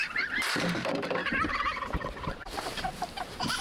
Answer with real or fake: fake